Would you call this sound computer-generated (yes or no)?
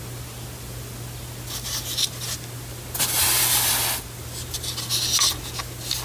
no